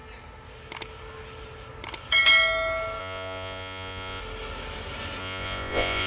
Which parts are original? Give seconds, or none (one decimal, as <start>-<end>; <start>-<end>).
0.0-3.0; 4.2-5.2